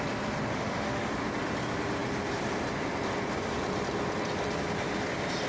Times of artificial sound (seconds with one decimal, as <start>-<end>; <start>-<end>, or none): 0.5-1.1